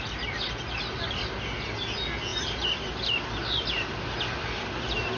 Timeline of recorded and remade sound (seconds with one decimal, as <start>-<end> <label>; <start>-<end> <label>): 0.0-5.2 recorded